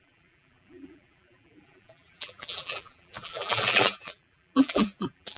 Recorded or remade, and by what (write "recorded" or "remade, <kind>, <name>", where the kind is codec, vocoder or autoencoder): remade, vocoder, BigVGAN v2